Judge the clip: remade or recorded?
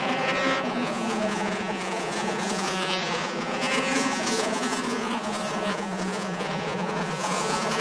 remade